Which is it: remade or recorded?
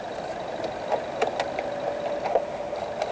recorded